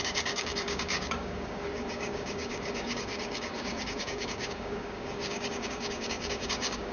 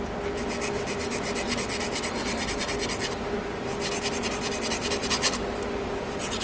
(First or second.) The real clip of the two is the second